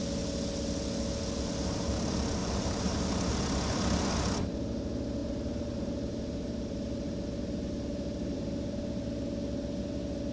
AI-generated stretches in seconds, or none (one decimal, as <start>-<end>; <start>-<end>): 2.4-3.3; 5.2-8.9